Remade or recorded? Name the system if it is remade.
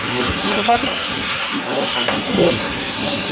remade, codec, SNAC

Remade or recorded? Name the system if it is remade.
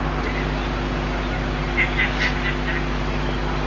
recorded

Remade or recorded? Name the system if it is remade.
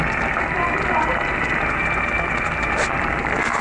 recorded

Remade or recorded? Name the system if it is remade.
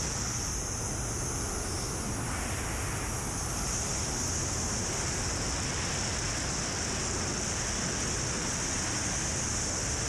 recorded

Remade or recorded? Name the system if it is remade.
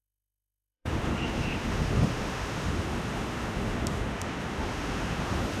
remade, autoencoder, DAC-VAE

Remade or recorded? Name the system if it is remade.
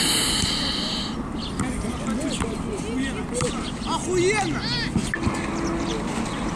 recorded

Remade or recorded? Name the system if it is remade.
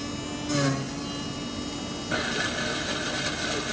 recorded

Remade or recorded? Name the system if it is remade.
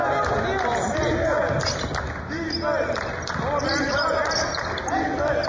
recorded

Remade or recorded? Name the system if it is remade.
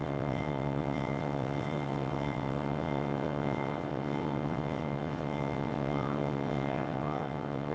remade, vocoder, WaveNeXt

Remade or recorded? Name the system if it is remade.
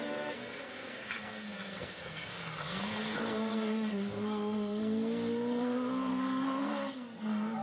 remade, codec, SNAC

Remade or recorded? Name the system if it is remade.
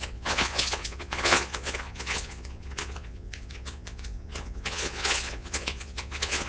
remade, vocoder, Vocos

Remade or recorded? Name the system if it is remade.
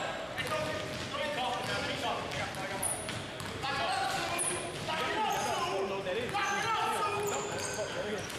recorded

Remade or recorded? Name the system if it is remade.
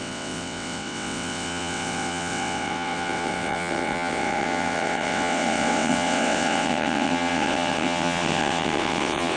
remade, vocoder, WaveNeXt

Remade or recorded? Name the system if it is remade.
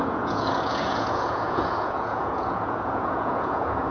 remade, vocoder, Vocos